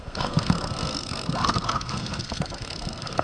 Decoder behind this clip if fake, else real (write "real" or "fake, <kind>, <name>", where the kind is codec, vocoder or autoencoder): fake, codec, SNAC